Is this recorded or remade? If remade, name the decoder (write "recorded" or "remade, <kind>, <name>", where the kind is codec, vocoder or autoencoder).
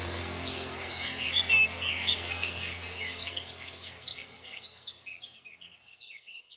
remade, codec, SNAC